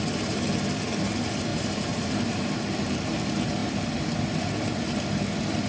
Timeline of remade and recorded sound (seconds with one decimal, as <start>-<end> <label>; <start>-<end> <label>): 0.0-1.5 recorded; 1.5-2.1 remade; 2.1-5.7 recorded